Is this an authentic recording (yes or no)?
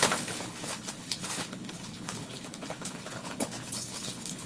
no